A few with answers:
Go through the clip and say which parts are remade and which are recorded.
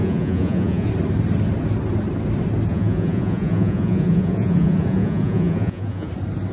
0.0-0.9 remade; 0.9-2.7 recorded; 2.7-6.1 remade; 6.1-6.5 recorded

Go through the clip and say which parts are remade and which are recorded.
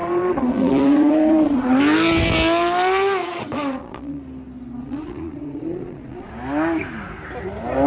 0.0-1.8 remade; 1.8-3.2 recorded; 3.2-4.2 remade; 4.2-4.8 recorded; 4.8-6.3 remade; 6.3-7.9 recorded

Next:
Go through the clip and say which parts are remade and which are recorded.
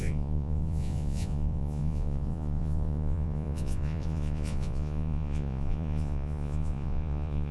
0.0-7.5 remade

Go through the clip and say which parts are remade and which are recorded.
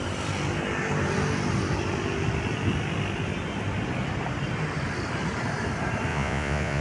0.0-6.1 recorded; 6.1-6.8 remade